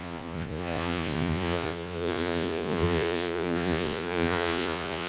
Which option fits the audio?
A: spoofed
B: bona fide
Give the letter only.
A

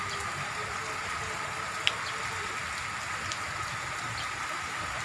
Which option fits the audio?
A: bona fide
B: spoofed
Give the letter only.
A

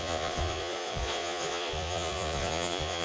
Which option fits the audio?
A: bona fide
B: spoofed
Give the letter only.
B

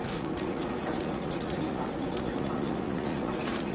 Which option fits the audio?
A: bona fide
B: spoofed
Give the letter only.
B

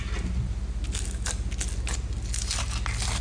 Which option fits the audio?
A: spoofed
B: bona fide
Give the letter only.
B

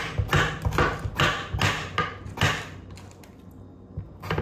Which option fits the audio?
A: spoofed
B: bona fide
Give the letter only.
B